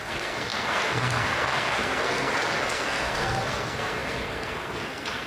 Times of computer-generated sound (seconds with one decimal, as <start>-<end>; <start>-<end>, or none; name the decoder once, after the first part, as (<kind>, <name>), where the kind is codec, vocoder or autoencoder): 0.0-5.3 (codec, SNAC)